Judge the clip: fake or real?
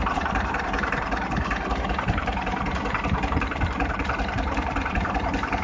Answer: fake